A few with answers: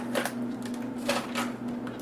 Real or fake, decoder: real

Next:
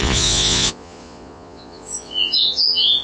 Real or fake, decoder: fake, vocoder, Vocos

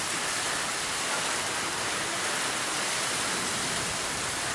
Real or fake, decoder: real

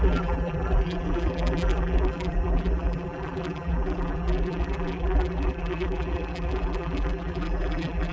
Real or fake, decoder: fake, vocoder, BigVGAN v2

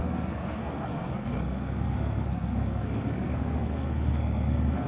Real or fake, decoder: fake, codec, SNAC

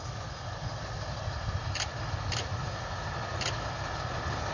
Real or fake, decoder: real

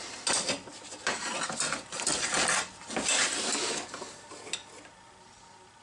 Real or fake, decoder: real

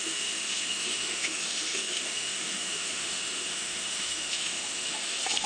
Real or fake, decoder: fake, autoencoder, DAC-VAE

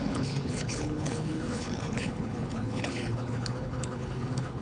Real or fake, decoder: fake, codec, HILCodec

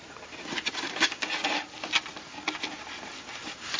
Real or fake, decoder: real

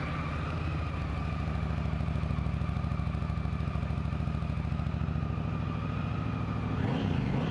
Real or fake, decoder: real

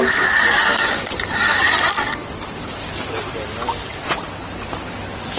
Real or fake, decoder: real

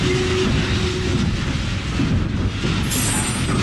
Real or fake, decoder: real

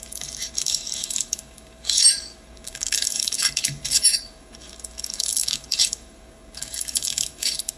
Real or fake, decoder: fake, codec, DAC